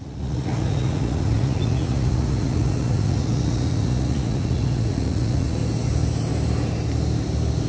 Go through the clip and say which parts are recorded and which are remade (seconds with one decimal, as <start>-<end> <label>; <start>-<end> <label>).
0.0-5.6 remade; 5.6-7.7 recorded